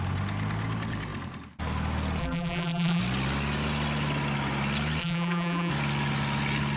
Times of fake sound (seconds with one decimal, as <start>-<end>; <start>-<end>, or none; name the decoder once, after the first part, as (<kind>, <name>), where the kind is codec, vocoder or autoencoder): 2.2-3.0 (vocoder, BigVGAN v2); 5.0-5.7